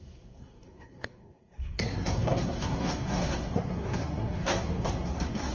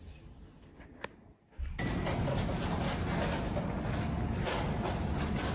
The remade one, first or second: first